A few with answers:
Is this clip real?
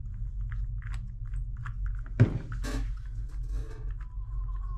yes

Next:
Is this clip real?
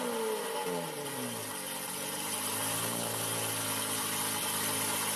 yes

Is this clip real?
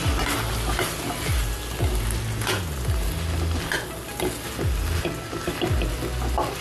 yes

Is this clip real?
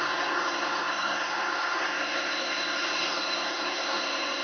no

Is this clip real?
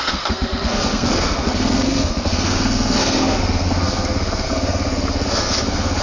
no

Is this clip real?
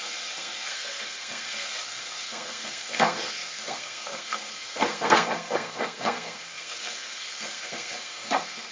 no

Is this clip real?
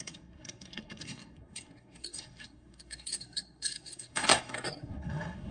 no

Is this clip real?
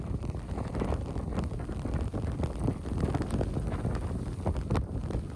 yes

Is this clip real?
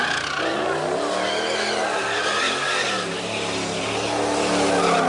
yes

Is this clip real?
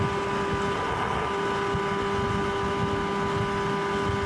yes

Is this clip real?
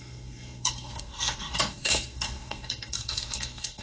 no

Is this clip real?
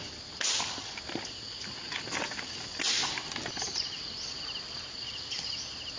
yes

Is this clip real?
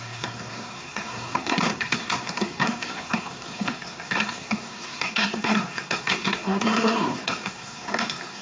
no